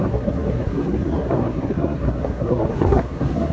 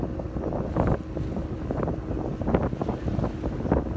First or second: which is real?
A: second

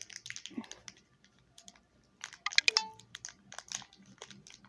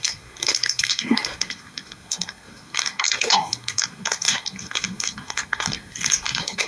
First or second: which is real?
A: first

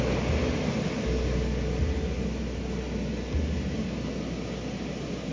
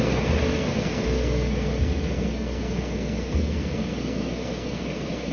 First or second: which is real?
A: first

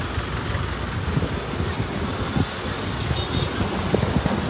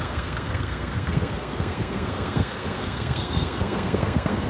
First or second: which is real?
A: first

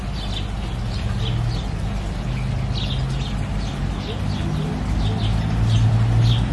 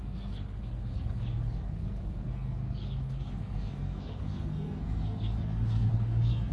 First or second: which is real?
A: first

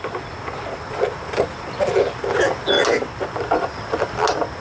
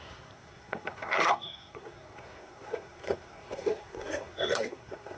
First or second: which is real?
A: first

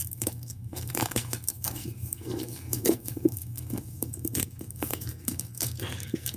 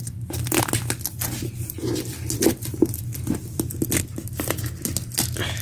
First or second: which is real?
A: second